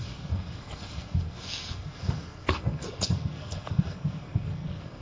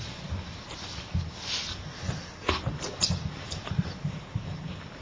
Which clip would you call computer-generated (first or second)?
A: first